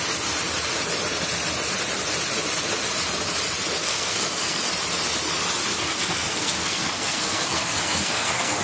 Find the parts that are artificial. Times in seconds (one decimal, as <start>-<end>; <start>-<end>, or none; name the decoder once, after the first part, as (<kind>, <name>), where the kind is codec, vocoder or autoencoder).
3.8-4.6 (codec, SNAC); 5.7-8.6